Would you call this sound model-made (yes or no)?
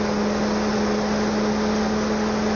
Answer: no